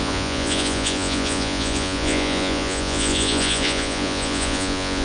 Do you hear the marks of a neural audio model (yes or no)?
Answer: yes